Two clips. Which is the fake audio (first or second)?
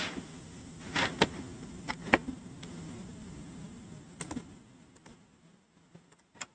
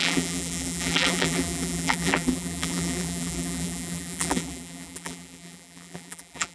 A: second